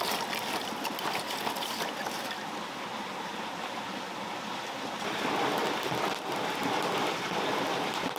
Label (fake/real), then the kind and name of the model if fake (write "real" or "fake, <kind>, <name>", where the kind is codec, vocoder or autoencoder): fake, vocoder, BigVGAN v2